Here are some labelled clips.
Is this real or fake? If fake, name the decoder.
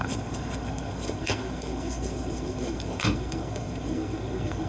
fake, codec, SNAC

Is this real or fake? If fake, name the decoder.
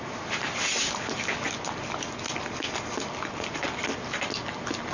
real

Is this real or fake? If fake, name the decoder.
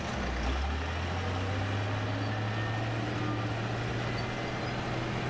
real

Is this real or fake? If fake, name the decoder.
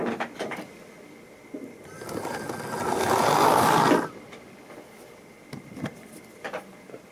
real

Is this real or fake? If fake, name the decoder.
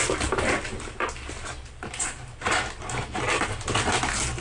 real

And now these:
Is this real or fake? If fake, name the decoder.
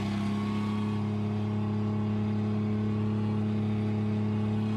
real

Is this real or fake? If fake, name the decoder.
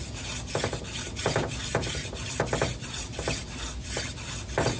real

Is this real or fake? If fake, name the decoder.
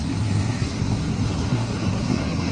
fake, codec, SNAC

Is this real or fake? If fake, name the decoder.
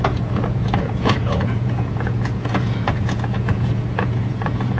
fake, vocoder, Vocos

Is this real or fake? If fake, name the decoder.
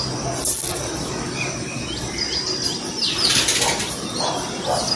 real